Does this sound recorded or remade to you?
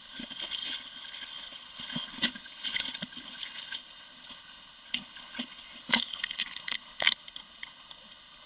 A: remade